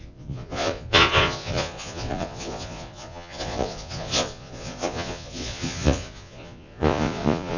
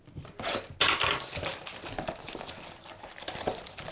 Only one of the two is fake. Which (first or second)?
first